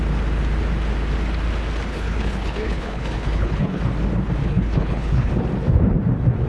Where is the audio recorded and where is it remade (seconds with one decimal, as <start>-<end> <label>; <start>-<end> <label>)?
0.0-1.9 recorded; 1.9-3.8 remade; 3.8-4.4 recorded; 4.4-5.3 remade; 5.3-6.5 recorded